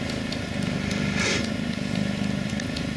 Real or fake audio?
real